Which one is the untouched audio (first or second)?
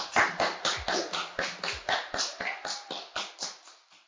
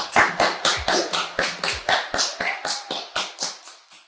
first